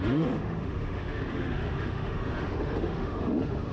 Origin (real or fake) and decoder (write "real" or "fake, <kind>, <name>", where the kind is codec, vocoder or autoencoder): fake, autoencoder, DAC-VAE